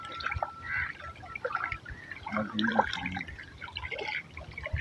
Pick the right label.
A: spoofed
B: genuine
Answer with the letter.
B